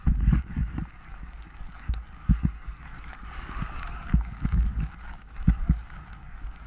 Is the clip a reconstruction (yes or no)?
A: yes